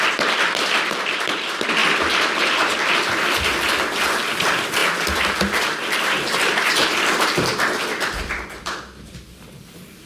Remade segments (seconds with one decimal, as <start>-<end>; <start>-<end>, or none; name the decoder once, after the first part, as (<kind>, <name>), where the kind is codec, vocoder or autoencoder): 0.0-1.8 (vocoder, BigVGAN v2); 4.3-4.8; 9.5-10.1